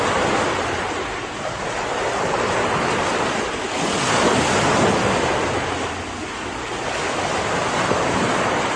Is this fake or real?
real